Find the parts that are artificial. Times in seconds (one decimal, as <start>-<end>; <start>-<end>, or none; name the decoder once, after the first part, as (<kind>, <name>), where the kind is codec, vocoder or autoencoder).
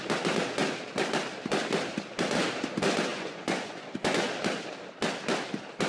3.1-4.3 (vocoder, Vocos)